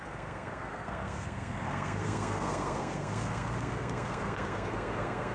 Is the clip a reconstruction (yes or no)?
yes